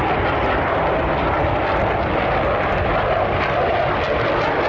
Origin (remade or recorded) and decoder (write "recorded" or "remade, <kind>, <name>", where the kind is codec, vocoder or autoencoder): recorded